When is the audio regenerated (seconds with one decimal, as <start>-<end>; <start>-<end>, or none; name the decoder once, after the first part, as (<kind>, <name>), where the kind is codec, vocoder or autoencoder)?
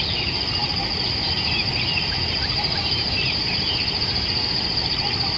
0.0-5.4 (vocoder, BigVGAN v2)